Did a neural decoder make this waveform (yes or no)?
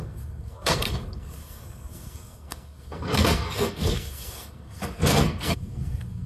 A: yes